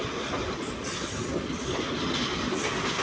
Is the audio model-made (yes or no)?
no